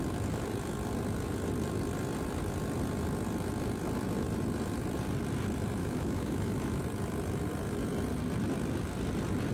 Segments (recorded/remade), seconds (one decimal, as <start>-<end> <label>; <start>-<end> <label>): 0.0-5.8 recorded; 5.8-6.8 remade; 6.8-9.5 recorded